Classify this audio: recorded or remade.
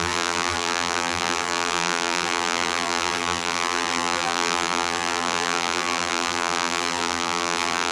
remade